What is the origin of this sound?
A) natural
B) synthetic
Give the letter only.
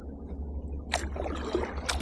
A